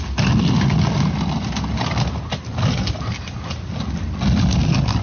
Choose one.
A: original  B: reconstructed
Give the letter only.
A